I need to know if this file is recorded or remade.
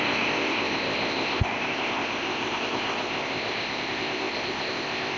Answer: remade